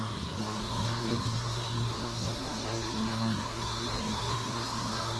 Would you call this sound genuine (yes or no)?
no